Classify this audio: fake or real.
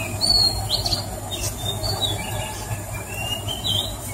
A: real